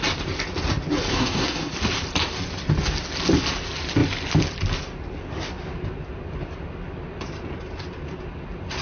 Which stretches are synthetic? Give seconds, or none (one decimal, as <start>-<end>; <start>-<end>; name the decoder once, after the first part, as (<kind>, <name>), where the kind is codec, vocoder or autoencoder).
1.1-1.7 (codec, SNAC)